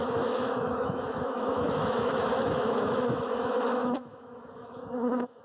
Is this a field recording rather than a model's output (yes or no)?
no